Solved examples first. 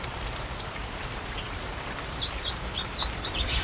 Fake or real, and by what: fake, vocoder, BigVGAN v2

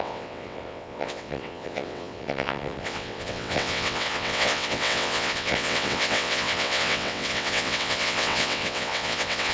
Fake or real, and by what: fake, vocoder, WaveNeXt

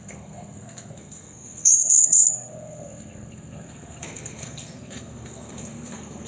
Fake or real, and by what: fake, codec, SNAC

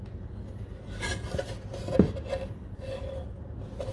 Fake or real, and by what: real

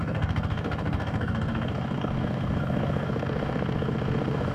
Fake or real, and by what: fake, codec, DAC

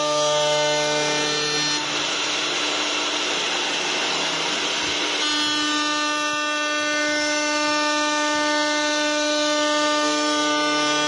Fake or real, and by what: real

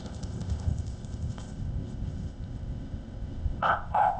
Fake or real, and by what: fake, codec, ZipCodec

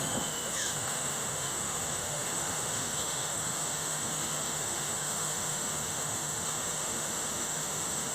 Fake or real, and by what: fake, autoencoder, DAC-VAE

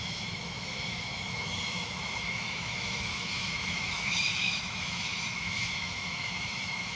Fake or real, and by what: fake, autoencoder, DAC-VAE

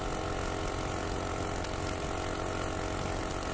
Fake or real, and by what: real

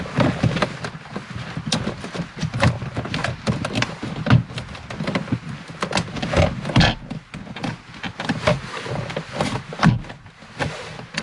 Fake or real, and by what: real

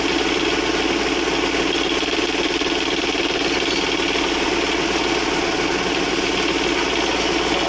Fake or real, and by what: real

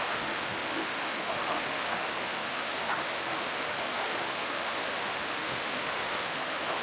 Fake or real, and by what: fake, autoencoder, DAC-VAE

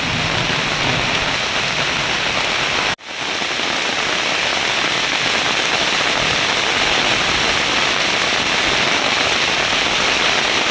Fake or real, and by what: real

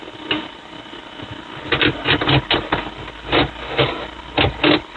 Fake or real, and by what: real